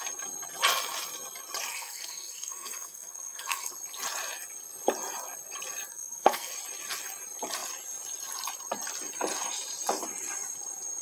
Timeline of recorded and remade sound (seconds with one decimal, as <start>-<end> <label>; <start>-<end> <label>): 0.0-1.7 recorded; 1.7-3.7 remade; 3.7-5.9 recorded; 5.9-6.5 remade; 6.5-11.0 recorded